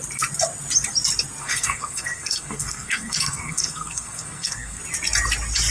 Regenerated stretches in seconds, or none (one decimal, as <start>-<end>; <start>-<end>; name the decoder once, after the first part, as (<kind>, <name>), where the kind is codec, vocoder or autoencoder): 1.4-4.8 (codec, SNAC)